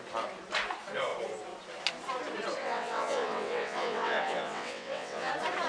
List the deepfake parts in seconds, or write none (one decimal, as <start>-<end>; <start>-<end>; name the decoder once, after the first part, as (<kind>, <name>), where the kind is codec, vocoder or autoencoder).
2.6-5.3 (vocoder, WaveNeXt)